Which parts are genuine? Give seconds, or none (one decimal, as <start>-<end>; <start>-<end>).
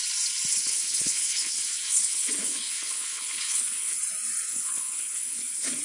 0.0-0.5; 4.0-4.5